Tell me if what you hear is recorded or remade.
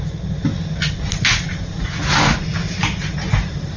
recorded